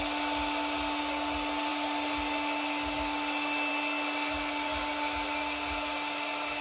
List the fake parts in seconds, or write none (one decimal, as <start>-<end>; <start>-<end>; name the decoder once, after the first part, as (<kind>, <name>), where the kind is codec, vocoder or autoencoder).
none